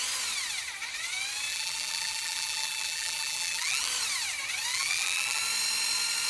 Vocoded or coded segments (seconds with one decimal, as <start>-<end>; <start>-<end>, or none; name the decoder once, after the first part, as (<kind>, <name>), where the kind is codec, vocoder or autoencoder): 1.5-3.9 (vocoder, BigVGAN v2); 4.7-5.4